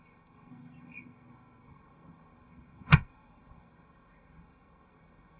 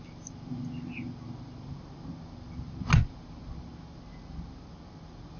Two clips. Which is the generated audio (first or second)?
first